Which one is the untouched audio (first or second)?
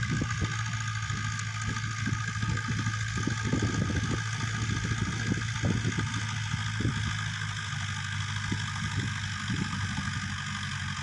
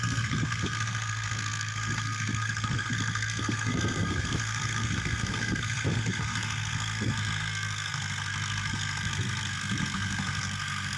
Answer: first